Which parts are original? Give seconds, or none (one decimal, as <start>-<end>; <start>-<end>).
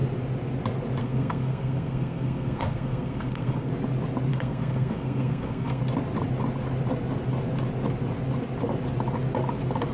0.0-1.0; 3.7-4.3; 5.8-9.9